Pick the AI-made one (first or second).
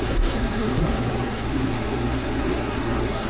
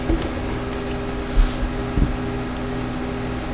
first